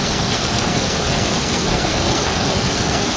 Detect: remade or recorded remade